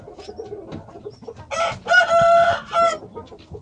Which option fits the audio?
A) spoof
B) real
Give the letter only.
B